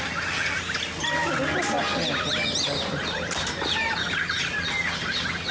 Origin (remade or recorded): recorded